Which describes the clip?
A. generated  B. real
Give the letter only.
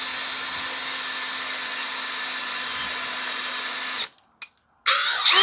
B